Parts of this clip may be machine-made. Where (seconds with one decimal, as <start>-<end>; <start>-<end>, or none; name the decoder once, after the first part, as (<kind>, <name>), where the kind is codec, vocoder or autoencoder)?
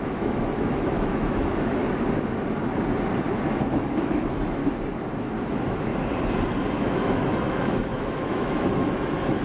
0.0-1.8 (autoencoder, DAC-VAE); 3.7-4.6; 5.5-5.9; 6.8-9.4